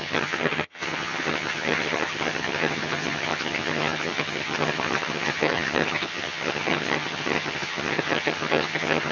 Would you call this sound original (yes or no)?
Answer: no